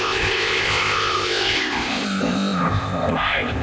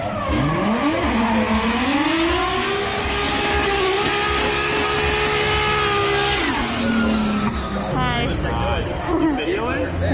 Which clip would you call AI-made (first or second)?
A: first